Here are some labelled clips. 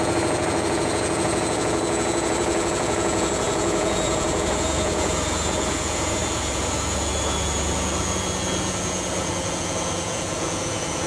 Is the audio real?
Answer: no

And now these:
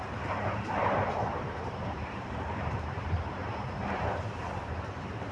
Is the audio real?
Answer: no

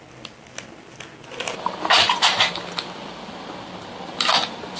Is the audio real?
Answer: yes